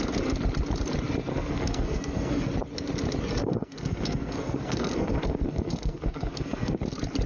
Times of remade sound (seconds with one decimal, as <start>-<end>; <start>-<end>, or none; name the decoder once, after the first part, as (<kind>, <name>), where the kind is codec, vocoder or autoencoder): 1.3-2.5 (codec, SNAC); 3.4-6.8